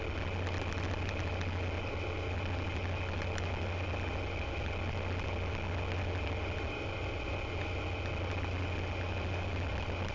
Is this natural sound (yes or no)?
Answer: yes